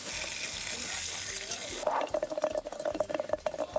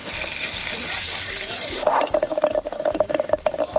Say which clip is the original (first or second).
first